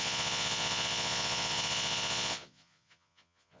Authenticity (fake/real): fake